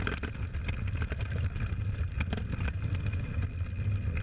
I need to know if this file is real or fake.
real